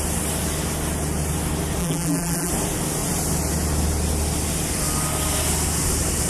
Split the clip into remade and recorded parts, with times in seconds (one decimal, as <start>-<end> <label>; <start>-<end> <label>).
0.0-1.8 recorded; 1.8-2.5 remade; 2.5-6.3 recorded